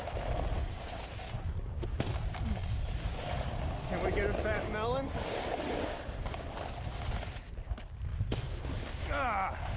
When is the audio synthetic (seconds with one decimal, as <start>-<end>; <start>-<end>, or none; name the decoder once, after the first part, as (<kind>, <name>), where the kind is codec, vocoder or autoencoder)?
none